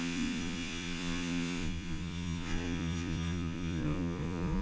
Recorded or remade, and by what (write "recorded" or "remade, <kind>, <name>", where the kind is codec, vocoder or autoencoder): remade, vocoder, Vocos